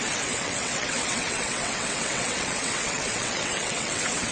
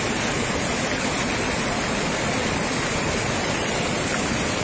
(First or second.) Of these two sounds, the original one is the second